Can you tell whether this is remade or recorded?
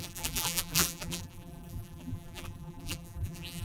remade